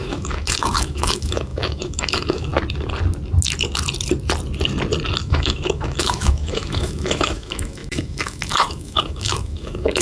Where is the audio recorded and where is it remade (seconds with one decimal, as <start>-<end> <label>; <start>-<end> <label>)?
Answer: 0.0-2.5 remade; 2.5-5.2 recorded; 5.2-10.0 remade

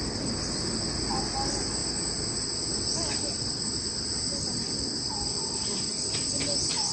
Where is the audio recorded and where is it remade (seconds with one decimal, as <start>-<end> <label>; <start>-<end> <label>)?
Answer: 0.0-6.9 recorded

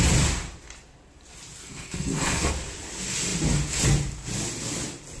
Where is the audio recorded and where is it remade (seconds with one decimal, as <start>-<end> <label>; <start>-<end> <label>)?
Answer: 0.0-1.6 recorded; 1.6-2.5 remade; 2.5-5.2 recorded

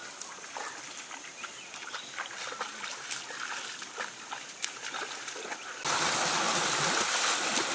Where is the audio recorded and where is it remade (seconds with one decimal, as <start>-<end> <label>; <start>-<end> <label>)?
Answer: 0.0-0.8 remade; 0.8-7.7 recorded

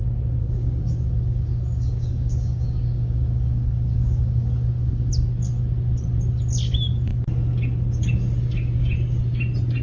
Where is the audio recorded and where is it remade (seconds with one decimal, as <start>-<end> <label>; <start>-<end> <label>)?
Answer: 0.0-0.4 recorded; 0.4-5.1 remade; 5.1-9.8 recorded

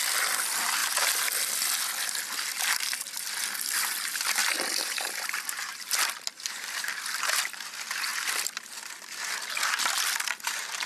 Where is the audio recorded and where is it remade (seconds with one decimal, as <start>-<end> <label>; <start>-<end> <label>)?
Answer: 0.0-4.4 recorded; 4.4-7.4 remade; 7.4-8.1 recorded; 8.1-8.8 remade; 8.8-10.9 recorded

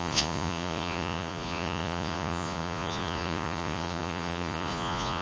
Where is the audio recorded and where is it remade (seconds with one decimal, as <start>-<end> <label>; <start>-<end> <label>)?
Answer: 0.0-5.2 remade

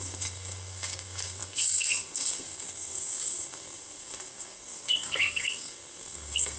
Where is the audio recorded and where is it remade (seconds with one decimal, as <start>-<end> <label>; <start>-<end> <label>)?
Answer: 0.0-6.6 remade